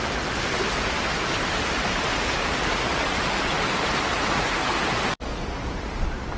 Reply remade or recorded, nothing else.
remade